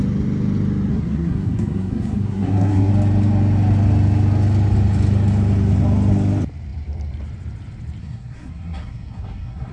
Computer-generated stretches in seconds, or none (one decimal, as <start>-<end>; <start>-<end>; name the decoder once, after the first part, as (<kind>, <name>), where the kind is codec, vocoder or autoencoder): 0.9-2.9 (codec, SNAC); 8.0-9.7